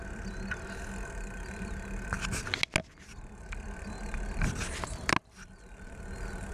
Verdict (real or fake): real